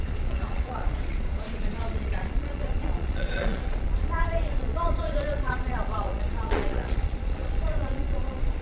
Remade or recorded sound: remade